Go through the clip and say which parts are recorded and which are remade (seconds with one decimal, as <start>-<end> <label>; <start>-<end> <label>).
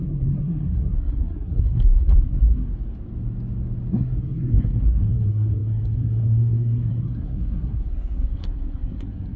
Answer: 0.0-2.7 remade; 2.7-3.9 recorded; 3.9-9.4 remade